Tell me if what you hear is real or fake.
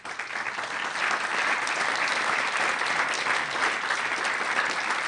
real